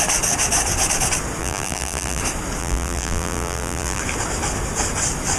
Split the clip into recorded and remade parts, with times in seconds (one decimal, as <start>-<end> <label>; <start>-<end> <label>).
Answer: 0.0-1.4 recorded; 1.4-2.2 remade; 2.2-2.6 recorded; 2.6-4.0 remade; 4.0-5.4 recorded